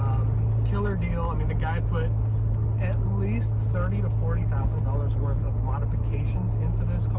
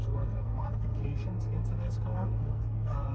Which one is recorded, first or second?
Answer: first